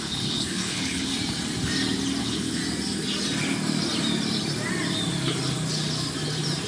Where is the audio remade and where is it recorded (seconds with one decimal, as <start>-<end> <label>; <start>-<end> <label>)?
0.0-1.1 remade; 1.1-2.2 recorded; 2.2-2.6 remade; 2.6-6.7 recorded